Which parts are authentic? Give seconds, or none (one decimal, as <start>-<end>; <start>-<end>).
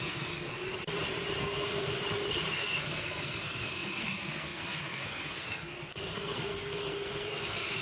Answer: 0.6-1.4; 2.0-2.5